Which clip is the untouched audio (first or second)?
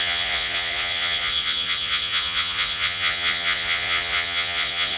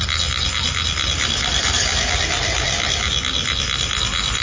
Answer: second